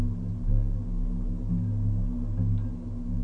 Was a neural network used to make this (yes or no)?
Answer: no